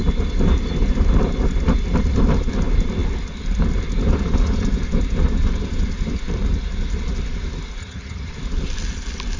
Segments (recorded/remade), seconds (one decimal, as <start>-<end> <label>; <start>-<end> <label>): 0.0-7.8 recorded; 7.8-8.3 remade; 8.3-9.4 recorded